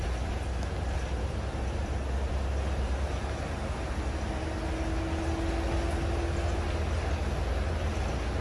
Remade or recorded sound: recorded